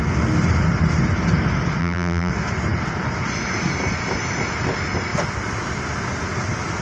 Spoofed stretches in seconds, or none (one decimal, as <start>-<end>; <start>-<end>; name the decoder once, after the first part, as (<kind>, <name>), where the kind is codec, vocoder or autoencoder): 1.8-2.3 (vocoder, BigVGAN v2)